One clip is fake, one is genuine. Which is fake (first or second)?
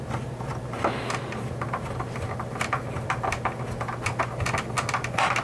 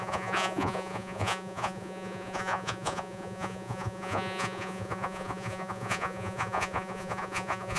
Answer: second